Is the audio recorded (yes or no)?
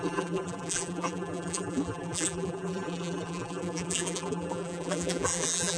no